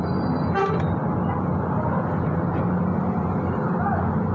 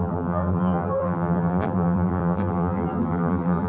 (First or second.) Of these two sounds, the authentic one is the first